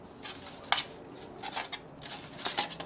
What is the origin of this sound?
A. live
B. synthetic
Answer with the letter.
A